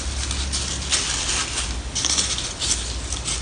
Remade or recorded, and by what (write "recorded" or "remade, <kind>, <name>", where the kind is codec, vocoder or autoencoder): recorded